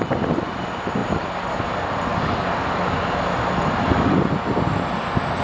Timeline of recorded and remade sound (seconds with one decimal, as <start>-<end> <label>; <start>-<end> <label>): 0.0-5.4 recorded

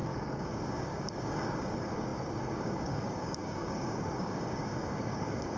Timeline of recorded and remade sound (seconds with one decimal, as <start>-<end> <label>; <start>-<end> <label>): 0.0-5.6 remade

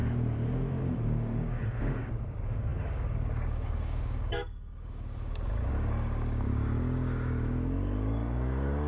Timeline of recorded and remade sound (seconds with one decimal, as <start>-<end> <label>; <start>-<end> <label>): 0.0-0.8 recorded; 0.8-8.9 remade

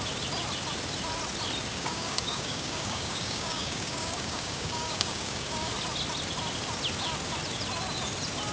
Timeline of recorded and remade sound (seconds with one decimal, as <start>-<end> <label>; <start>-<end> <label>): 0.0-1.7 recorded; 1.7-5.7 remade; 5.7-8.5 recorded

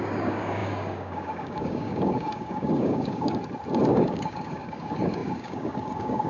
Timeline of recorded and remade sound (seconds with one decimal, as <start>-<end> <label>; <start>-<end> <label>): 0.0-3.4 remade; 3.4-3.9 recorded; 3.9-6.3 remade

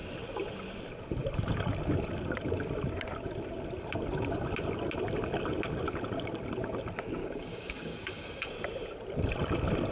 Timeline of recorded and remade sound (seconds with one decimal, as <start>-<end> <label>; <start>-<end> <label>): 0.0-7.2 recorded; 7.2-8.5 remade; 8.5-9.9 recorded

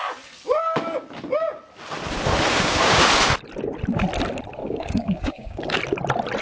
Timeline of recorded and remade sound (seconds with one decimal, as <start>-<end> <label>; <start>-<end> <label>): 0.0-2.5 recorded; 2.5-3.1 remade; 3.1-4.6 recorded; 4.6-5.8 remade; 5.8-6.4 recorded

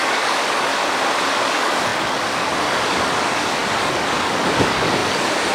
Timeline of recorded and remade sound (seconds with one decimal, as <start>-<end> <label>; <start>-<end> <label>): 0.0-0.7 remade; 0.7-1.3 recorded; 1.3-5.5 remade